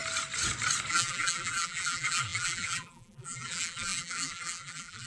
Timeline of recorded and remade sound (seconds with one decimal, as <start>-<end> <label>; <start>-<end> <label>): 0.0-0.9 recorded; 0.9-5.1 remade